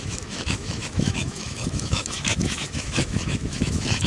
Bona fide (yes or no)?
no